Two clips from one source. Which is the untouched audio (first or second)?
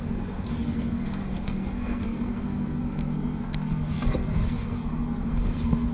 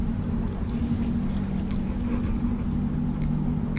second